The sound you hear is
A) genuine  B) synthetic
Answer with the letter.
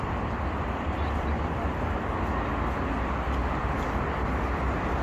A